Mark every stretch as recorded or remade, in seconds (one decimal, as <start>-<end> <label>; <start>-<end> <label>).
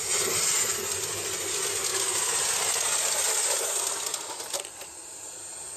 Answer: 0.0-5.8 recorded